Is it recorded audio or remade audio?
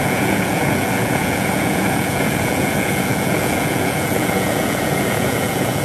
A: remade